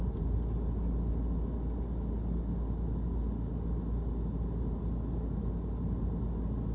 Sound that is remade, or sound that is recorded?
recorded